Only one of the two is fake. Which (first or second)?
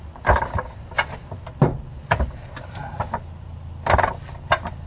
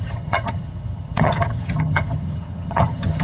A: second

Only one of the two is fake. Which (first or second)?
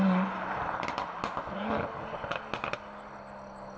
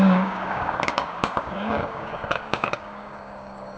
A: second